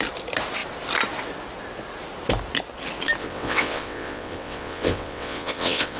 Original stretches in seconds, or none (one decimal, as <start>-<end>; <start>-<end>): 0.0-3.2